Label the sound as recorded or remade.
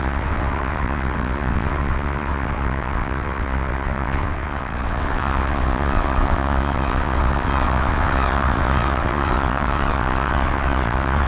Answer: remade